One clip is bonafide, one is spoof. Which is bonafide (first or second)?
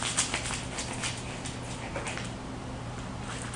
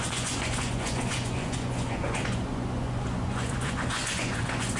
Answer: first